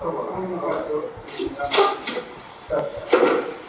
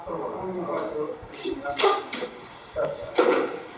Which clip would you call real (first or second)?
first